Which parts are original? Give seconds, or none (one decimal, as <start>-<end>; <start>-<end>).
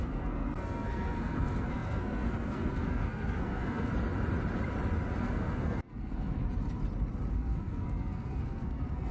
3.9-5.2; 6.4-7.3